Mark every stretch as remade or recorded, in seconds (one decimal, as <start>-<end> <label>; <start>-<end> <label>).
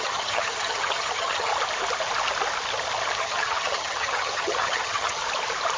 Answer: 0.0-1.5 remade; 1.5-3.2 recorded; 3.2-5.2 remade; 5.2-5.8 recorded